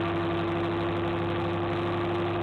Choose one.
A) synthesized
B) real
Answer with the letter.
B